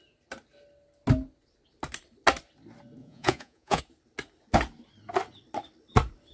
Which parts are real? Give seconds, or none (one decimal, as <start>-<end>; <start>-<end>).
0.0-3.0; 3.8-6.3